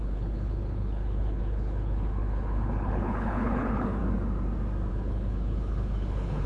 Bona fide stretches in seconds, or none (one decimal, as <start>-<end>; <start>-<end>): 4.0-4.9